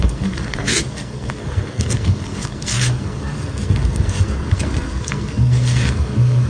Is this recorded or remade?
remade